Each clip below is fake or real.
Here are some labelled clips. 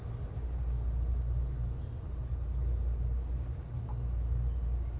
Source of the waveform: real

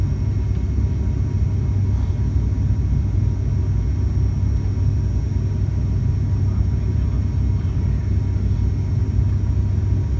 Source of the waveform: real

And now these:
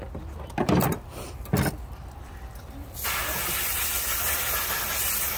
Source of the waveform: real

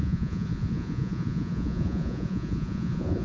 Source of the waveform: fake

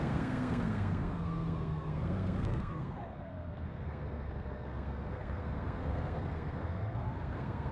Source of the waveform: fake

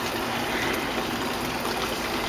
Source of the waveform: real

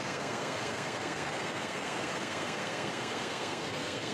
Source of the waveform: fake